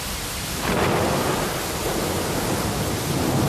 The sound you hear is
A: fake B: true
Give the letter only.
B